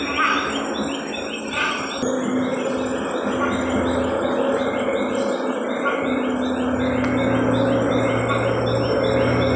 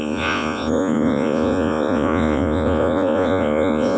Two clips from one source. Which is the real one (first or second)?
first